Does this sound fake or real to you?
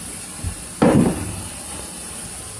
real